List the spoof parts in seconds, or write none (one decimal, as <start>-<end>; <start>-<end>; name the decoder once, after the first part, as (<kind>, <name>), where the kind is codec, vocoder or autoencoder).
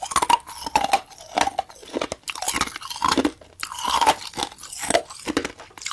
none